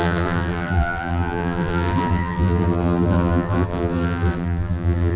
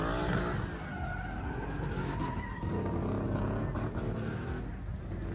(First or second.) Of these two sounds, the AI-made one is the first